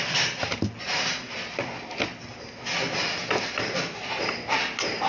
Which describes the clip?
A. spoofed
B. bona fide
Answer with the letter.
B